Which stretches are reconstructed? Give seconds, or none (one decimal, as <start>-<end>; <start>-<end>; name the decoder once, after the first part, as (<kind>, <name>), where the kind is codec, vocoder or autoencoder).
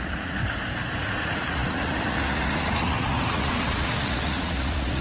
0.0-0.4 (vocoder, Vocos); 1.0-5.0